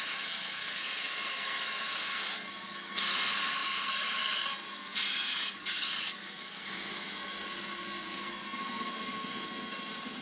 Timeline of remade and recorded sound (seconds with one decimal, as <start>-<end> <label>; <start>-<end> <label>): 0.0-10.2 remade